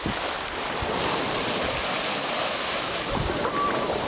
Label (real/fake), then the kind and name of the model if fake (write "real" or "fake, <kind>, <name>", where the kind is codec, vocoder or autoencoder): real